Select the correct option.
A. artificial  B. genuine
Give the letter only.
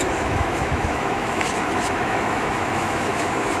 A